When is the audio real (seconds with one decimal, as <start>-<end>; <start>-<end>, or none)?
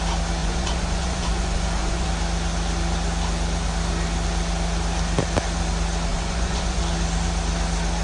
0.0-0.4; 2.1-6.1; 6.8-8.0